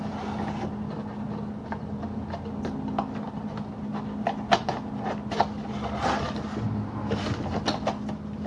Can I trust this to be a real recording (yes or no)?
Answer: yes